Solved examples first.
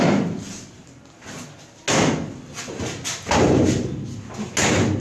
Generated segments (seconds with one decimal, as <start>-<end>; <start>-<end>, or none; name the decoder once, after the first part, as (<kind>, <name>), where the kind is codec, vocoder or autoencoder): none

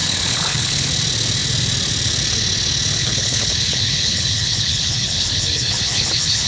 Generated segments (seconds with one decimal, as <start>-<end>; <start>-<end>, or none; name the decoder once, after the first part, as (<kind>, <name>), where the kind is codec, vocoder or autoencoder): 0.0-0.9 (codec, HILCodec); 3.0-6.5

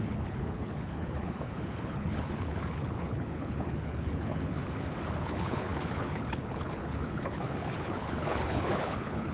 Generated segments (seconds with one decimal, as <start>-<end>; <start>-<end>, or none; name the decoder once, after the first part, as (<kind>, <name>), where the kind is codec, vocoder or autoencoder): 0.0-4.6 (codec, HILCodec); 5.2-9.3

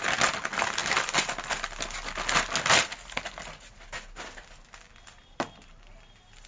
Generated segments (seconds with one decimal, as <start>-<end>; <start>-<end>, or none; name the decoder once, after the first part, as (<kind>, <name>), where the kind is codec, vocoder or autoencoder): none

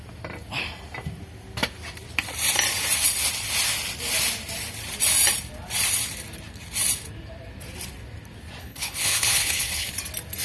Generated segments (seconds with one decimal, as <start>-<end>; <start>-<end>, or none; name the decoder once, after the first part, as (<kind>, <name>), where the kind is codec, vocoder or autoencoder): 8.6-9.9 (codec, HILCodec)

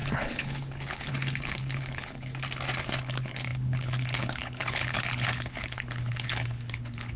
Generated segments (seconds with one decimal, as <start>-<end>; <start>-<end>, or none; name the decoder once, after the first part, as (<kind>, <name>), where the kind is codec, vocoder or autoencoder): 0.0-2.3 (codec, HILCodec); 3.0-7.2